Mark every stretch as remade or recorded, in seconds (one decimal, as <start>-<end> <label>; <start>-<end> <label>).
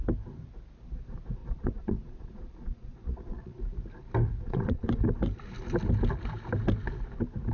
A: 0.0-1.4 recorded; 1.4-3.6 remade; 3.6-4.4 recorded; 4.4-5.0 remade; 5.0-7.5 recorded